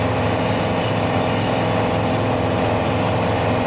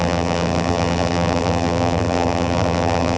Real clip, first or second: first